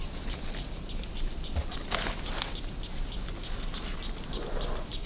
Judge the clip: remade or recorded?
recorded